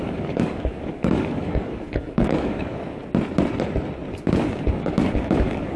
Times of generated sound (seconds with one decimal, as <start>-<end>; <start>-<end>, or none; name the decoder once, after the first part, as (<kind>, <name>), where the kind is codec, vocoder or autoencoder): 0.0-3.0 (codec, DAC); 4.2-5.8